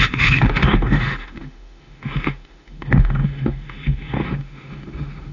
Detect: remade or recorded remade